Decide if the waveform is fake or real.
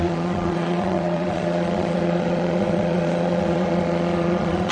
fake